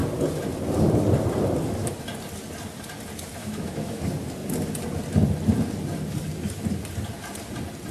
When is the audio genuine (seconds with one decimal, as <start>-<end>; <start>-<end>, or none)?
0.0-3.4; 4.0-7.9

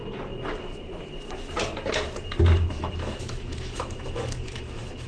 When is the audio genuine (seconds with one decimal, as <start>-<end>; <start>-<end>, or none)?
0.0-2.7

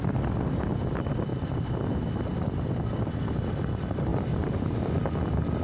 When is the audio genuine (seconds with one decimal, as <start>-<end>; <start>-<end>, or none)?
0.0-4.1; 5.0-5.6

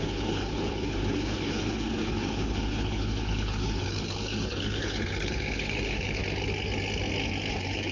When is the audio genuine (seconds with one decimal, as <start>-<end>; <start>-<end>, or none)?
6.2-7.5